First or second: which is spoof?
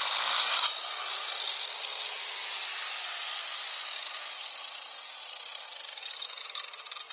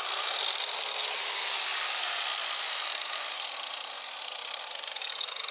second